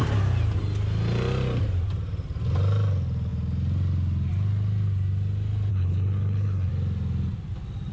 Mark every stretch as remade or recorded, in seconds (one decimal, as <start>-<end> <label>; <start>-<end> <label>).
0.0-5.7 recorded; 5.7-6.7 remade; 6.7-7.9 recorded